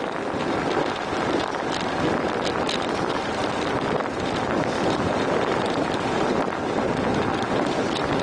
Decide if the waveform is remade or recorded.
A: recorded